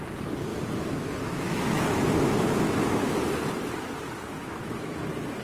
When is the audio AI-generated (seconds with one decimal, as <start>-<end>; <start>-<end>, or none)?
0.5-3.2; 4.4-5.0